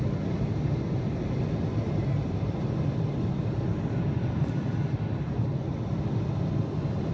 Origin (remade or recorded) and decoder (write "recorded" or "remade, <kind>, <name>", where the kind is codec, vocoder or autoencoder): recorded